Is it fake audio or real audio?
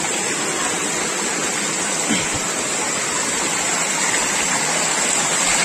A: real